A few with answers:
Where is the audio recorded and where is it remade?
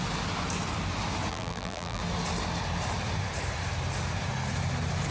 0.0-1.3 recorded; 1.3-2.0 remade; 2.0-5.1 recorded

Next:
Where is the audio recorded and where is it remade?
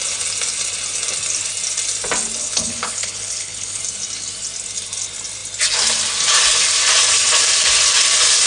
0.0-2.4 recorded; 2.4-3.8 remade; 3.8-8.5 recorded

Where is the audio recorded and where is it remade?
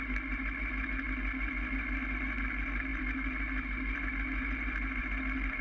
0.0-5.6 recorded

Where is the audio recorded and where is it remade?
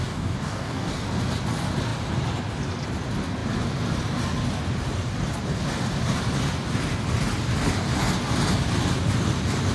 0.0-0.9 remade; 0.9-9.7 recorded